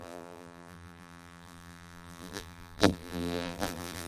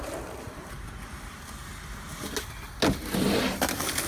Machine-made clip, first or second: first